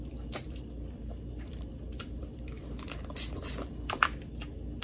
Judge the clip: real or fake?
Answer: fake